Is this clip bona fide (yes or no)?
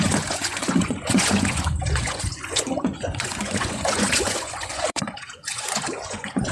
no